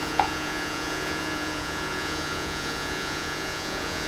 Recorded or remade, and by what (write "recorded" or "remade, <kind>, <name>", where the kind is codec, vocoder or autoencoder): remade, vocoder, Vocos